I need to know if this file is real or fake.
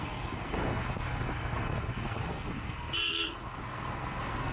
fake